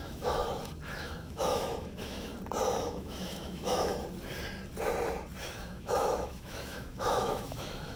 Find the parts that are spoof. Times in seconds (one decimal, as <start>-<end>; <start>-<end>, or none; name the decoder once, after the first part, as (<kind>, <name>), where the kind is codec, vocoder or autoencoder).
0.0-0.4 (autoencoder, DAC-VAE); 0.9-2.3; 2.8-3.9; 5.4-8.0